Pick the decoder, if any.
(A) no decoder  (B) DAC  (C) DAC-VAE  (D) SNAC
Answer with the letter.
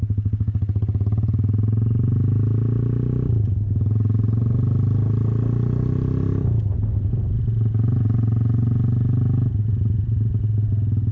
A